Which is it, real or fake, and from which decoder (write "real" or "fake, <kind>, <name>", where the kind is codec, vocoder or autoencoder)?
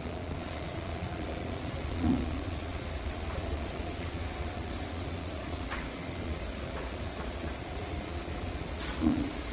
fake, vocoder, Vocos